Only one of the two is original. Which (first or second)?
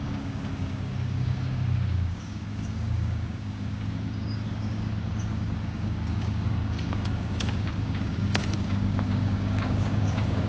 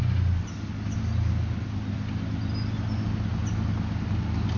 second